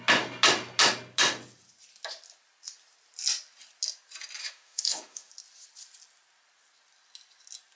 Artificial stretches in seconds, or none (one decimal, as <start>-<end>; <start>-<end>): 4.4-5.3

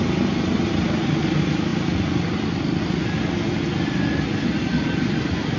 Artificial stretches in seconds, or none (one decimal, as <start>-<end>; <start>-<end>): none

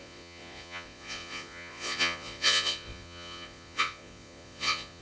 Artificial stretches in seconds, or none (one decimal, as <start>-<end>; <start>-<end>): 0.0-5.0

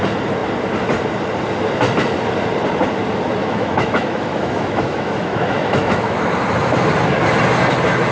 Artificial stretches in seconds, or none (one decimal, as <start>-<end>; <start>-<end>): 3.4-6.3

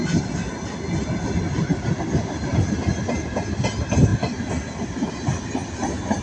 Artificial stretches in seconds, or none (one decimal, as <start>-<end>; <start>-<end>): none